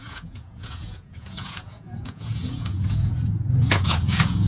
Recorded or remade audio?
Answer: remade